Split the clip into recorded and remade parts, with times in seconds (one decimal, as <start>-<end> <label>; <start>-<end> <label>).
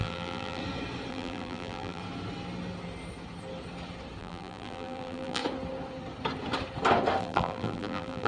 0.0-0.6 remade; 0.6-1.1 recorded; 1.1-2.0 remade; 2.0-4.2 recorded; 4.2-5.4 remade; 5.4-7.2 recorded; 7.2-8.3 remade